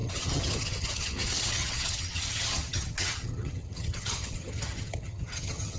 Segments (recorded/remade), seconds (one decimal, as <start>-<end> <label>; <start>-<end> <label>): 0.0-5.8 remade